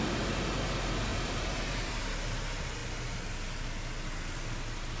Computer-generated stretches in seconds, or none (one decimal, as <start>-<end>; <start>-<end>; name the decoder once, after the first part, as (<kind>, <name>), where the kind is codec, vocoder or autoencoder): 1.1-2.0 (vocoder, BigVGAN v2)